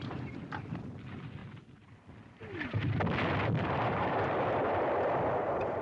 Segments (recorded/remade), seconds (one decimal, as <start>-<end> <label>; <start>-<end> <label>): 0.0-5.8 remade